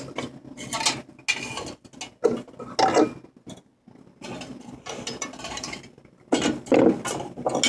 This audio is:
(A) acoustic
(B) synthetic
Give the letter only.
A